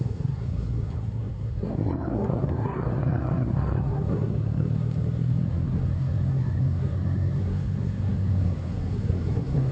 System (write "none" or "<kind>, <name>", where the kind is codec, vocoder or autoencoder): codec, SNAC